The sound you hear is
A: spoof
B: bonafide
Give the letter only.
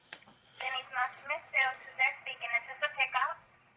A